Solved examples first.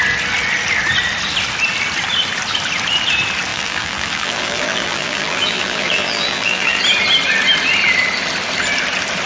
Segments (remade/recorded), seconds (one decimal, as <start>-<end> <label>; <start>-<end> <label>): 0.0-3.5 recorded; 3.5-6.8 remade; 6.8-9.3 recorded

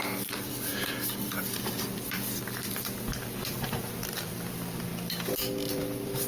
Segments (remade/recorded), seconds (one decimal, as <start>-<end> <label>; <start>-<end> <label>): 0.0-4.9 remade; 4.9-5.7 recorded; 5.7-6.3 remade

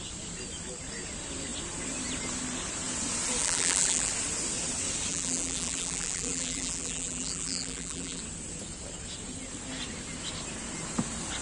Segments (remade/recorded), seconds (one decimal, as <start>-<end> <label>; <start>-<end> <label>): 0.0-3.4 recorded; 3.4-4.1 remade; 4.1-5.1 recorded; 5.1-8.2 remade; 8.2-11.4 recorded

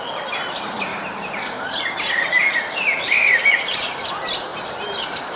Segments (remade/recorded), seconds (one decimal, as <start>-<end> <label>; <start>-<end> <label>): 0.0-0.9 recorded; 0.9-4.1 remade; 4.1-4.5 recorded; 4.5-5.4 remade

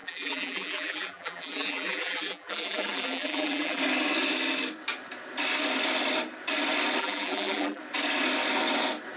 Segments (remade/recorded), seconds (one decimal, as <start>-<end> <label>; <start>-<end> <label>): 0.0-3.8 remade; 3.8-7.0 recorded; 7.0-7.8 remade; 7.8-9.2 recorded